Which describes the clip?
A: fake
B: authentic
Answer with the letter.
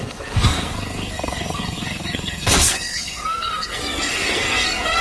A